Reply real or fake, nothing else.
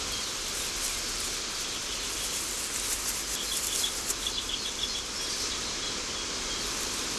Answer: real